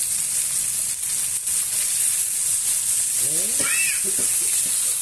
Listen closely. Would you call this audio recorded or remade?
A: recorded